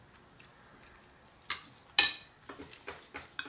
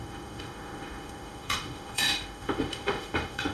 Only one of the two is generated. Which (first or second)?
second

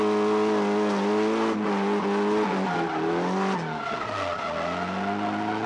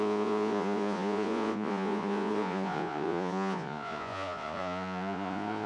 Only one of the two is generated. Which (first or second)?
second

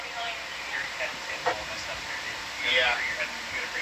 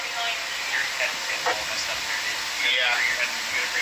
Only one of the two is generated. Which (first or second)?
first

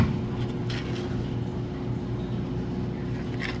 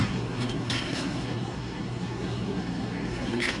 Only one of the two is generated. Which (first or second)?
second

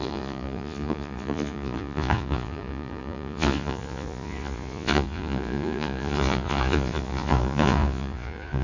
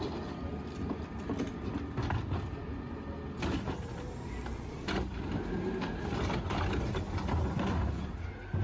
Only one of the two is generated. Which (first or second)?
first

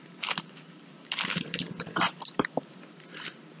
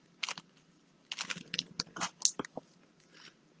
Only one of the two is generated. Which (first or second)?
first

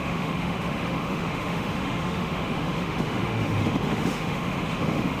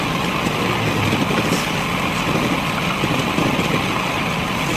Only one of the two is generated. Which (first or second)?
first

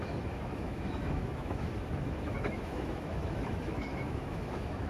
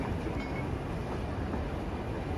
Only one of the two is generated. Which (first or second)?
first